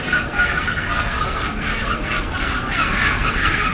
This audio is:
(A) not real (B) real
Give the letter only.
A